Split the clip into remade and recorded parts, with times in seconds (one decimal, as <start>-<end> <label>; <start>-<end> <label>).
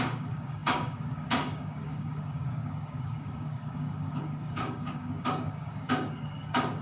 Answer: 0.0-6.8 remade